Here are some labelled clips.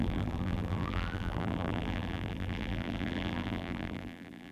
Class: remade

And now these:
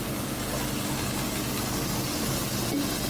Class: recorded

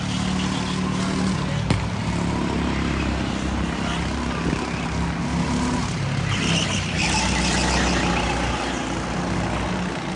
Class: recorded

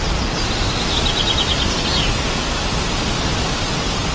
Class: recorded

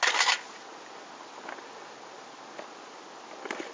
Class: recorded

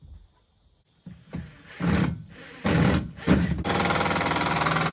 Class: recorded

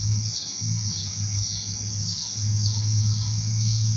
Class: remade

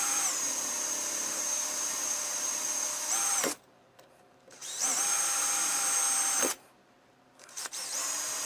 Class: remade